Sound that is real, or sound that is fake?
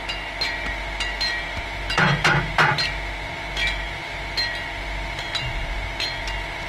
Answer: real